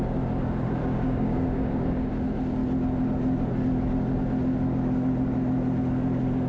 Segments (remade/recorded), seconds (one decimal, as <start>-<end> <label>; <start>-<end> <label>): 0.0-0.8 recorded; 0.8-2.1 remade; 2.1-6.5 recorded